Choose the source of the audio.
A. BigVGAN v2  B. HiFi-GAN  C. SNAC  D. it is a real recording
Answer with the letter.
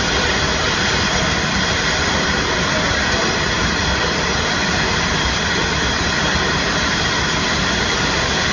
D